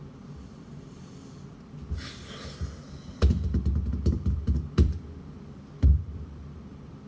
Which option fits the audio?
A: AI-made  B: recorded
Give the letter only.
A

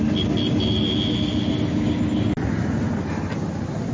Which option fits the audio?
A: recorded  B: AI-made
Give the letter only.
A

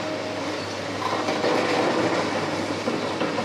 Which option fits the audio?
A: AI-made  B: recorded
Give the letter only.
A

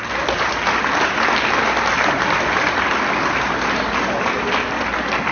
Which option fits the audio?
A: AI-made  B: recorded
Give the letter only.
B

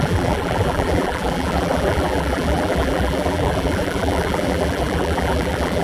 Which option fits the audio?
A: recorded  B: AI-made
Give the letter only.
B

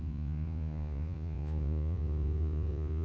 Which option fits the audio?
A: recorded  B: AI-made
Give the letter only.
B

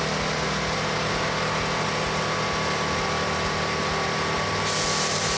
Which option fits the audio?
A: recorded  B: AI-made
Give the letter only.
A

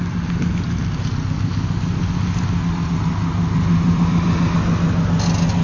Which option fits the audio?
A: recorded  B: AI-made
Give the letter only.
A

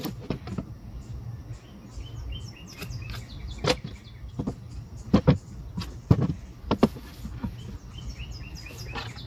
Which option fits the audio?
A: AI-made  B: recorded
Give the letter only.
B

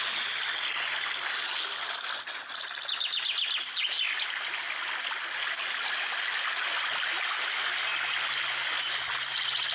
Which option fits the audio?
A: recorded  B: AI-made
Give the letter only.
A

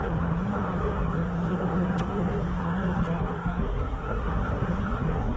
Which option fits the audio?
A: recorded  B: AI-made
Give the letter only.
B